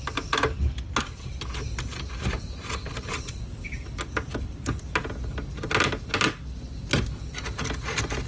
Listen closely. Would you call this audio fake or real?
real